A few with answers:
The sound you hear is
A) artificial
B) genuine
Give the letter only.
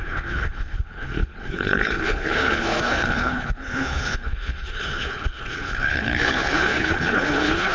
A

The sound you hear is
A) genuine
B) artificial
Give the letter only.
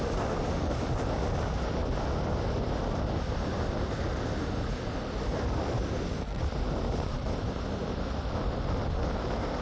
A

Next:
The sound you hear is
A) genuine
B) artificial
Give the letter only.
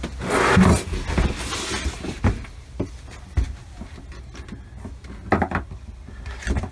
A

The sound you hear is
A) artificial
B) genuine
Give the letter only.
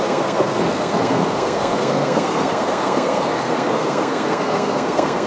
A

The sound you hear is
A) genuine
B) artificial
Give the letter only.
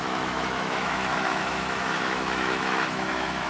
B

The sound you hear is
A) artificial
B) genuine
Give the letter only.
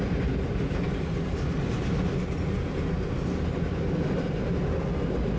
B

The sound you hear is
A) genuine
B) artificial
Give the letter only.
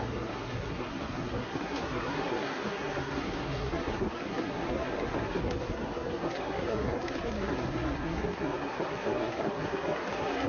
B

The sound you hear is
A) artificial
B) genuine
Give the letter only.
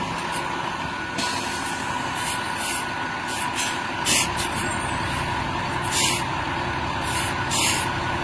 B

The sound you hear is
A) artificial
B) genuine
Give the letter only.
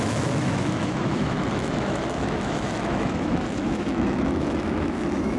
A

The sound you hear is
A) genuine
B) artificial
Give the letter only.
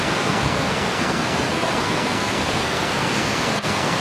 B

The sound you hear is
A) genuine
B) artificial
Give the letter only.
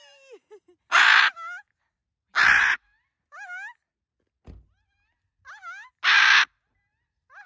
A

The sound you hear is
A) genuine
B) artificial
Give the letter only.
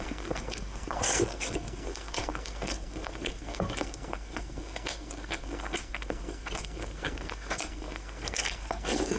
B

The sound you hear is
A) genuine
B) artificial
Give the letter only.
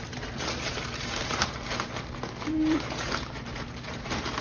B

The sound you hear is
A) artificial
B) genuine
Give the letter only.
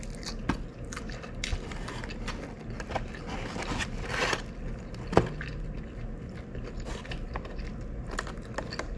B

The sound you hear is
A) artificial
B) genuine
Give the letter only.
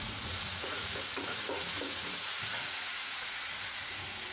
A